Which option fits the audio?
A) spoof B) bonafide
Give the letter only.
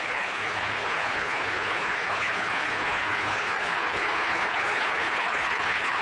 A